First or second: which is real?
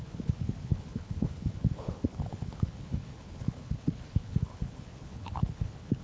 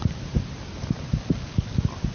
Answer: second